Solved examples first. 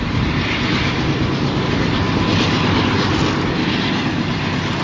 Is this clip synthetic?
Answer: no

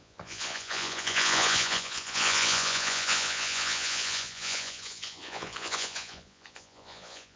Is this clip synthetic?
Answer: yes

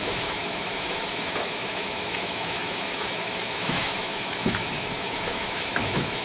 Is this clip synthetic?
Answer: yes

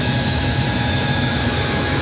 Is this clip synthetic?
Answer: yes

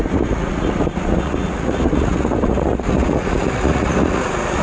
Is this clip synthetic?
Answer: yes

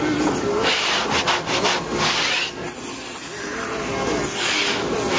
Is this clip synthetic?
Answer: no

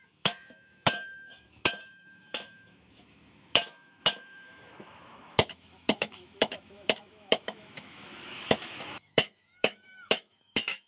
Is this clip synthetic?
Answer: yes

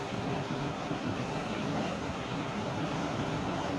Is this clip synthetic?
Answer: yes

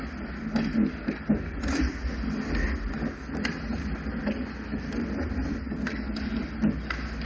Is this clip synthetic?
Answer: no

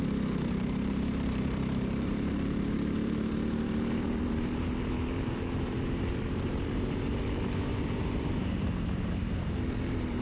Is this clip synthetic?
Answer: yes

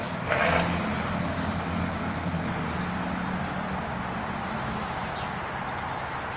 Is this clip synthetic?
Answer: no